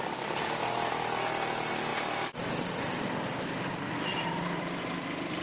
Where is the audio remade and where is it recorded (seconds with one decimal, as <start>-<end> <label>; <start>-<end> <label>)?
0.0-5.4 recorded